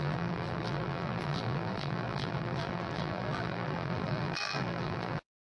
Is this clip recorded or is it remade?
remade